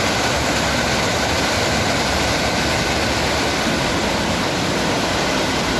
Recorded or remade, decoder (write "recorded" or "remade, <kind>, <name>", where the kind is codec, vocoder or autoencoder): recorded